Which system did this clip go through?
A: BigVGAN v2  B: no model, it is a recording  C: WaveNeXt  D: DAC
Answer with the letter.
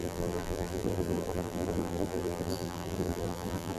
A